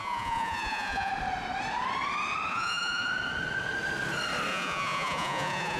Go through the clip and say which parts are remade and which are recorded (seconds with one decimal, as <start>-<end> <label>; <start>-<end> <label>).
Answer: 0.0-1.1 remade; 1.1-2.5 recorded; 2.5-3.1 remade; 3.1-4.5 recorded; 4.5-5.8 remade